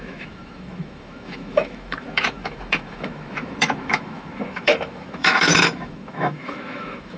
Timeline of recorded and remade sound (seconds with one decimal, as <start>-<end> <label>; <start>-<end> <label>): 0.0-7.2 remade